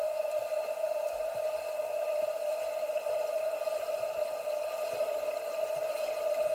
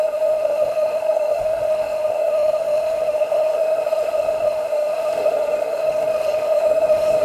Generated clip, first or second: second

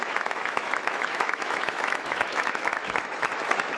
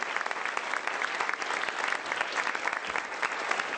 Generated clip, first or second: first